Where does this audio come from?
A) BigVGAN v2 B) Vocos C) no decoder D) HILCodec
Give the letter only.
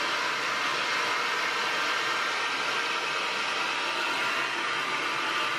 C